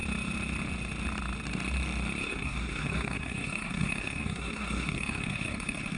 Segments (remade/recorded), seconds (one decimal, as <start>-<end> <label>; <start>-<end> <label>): 0.0-2.2 recorded; 2.2-6.0 remade